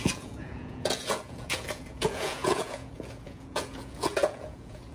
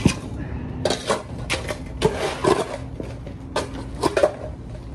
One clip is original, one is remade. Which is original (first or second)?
second